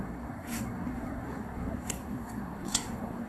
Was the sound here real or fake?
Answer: fake